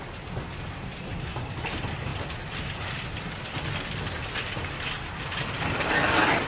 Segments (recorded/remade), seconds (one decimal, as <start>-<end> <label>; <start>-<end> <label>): 0.0-6.5 recorded